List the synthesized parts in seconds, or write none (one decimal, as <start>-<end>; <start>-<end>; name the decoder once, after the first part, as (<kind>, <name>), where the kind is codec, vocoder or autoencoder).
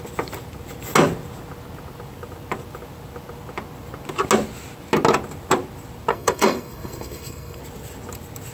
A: 6.1-7.6 (codec, SNAC)